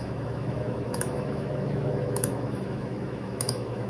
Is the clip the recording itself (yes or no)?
no